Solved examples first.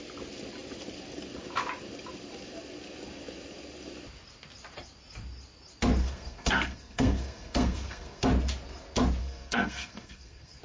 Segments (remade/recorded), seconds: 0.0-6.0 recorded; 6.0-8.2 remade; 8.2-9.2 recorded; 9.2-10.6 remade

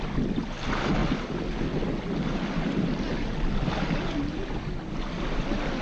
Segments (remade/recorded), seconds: 0.0-5.8 recorded

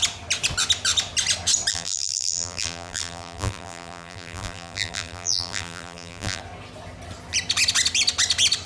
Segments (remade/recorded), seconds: 0.0-1.7 recorded; 1.7-6.4 remade; 6.4-8.7 recorded

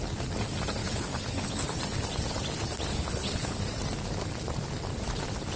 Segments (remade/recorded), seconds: 0.0-0.8 recorded; 0.8-1.8 remade; 1.8-2.9 recorded; 2.9-3.6 remade; 3.6-5.6 recorded

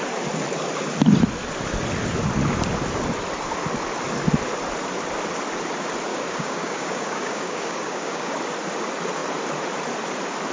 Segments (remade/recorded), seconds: 0.0-6.1 recorded; 6.1-8.4 remade; 8.4-10.5 recorded

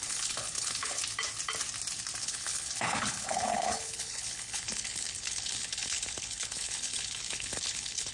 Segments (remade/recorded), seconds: 0.0-1.0 remade; 1.0-2.2 recorded; 2.2-8.1 remade

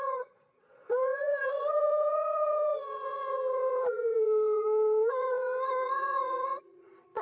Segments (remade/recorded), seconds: 0.0-7.2 remade